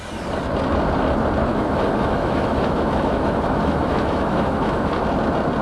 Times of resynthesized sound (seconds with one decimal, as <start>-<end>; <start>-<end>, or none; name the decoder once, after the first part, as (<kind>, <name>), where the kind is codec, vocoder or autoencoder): 1.5-4.9 (autoencoder, DAC-VAE)